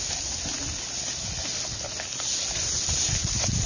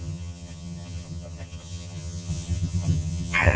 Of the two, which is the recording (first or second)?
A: first